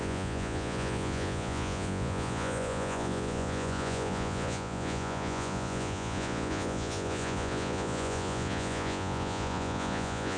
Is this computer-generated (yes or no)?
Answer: yes